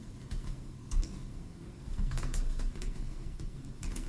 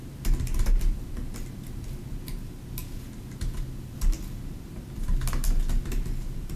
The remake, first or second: first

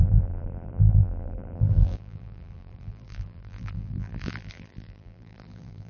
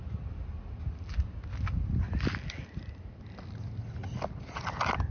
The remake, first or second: first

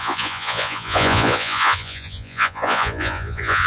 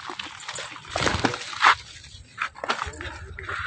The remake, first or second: first